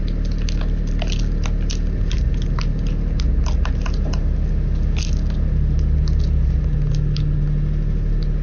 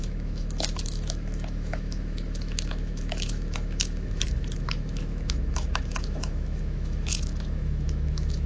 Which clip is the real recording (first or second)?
first